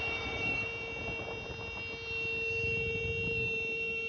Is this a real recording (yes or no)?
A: yes